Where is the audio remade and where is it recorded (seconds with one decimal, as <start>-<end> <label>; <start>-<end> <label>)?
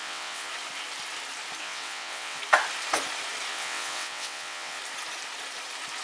0.0-0.5 remade; 0.5-1.6 recorded; 1.6-2.4 remade; 2.4-3.5 recorded; 3.5-4.8 remade; 4.8-6.0 recorded